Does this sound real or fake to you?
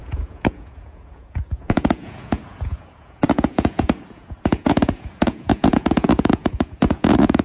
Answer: fake